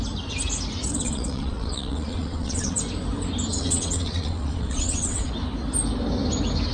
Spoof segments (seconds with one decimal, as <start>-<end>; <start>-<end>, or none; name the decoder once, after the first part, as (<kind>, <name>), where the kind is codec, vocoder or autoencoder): 0.9-2.8 (vocoder, WaveNeXt); 3.5-5.3